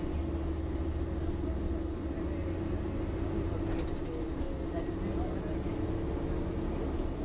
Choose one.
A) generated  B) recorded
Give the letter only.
B